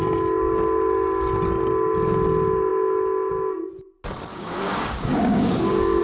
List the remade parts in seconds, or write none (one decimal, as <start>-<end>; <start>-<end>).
4.3-6.0